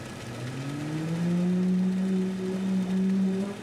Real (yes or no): yes